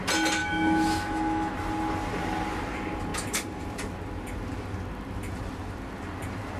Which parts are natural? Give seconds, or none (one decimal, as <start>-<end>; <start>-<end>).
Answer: 0.0-0.4; 1.5-6.6